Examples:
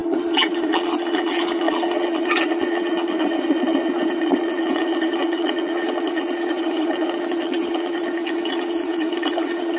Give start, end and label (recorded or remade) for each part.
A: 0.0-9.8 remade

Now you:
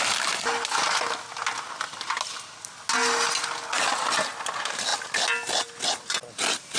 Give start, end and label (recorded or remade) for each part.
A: 0.0-6.8 recorded

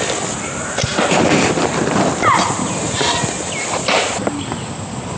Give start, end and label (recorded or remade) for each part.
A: 0.0-5.2 recorded